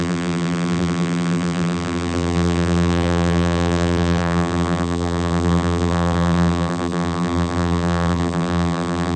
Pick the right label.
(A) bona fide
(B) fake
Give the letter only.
B